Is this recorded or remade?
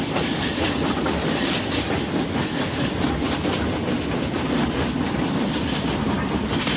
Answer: recorded